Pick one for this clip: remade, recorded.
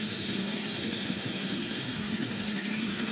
remade